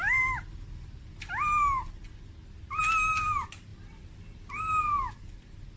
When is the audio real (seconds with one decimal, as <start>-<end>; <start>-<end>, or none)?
0.0-5.8